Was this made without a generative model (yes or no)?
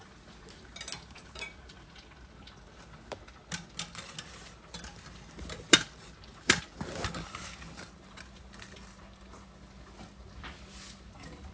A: yes